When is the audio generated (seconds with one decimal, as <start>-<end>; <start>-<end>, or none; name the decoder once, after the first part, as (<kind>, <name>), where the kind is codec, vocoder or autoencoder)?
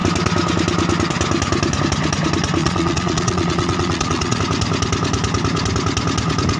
2.6-4.4 (vocoder, Vocos)